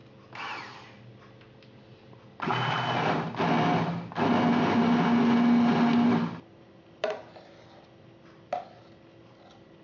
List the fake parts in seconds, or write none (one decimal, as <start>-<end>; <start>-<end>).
none